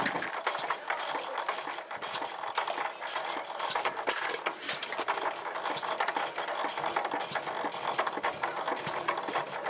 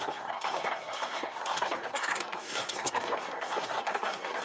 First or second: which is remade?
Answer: second